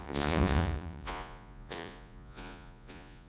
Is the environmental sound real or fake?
fake